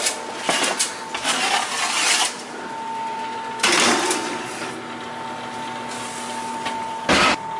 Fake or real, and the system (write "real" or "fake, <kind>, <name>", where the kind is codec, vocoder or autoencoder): real